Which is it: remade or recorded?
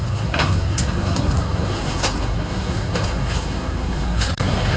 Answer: remade